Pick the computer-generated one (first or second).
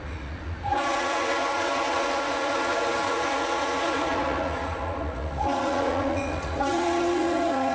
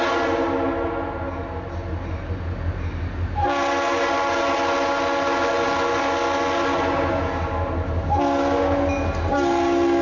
first